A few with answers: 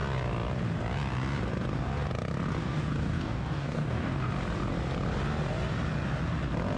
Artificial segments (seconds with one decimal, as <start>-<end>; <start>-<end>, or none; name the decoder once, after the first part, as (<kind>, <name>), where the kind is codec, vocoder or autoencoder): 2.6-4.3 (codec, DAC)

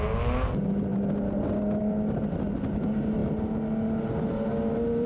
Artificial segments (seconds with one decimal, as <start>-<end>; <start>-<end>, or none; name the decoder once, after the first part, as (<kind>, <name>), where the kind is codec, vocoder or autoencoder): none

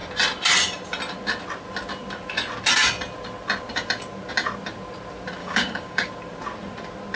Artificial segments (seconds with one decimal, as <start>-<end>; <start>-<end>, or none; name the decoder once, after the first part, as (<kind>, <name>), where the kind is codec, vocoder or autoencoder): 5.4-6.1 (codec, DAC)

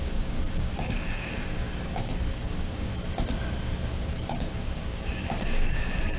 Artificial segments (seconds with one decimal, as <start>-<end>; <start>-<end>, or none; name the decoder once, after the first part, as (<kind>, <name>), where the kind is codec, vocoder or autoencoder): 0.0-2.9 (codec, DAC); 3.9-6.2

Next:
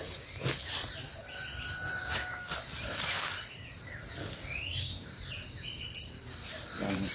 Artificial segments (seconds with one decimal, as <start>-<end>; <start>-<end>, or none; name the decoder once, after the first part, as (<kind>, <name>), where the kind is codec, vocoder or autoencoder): 2.0-2.5 (codec, DAC); 4.2-5.1

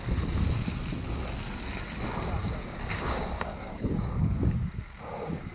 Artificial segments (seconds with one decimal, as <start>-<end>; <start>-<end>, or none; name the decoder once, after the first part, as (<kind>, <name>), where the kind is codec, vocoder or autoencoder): 2.4-5.5 (codec, DAC)